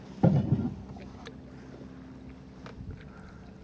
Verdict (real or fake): real